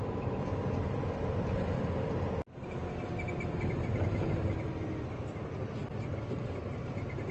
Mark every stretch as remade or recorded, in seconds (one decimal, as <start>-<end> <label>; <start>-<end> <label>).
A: 0.0-7.3 recorded